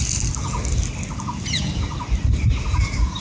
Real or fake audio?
real